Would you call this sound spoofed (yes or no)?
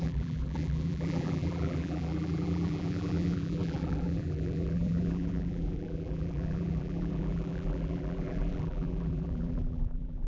yes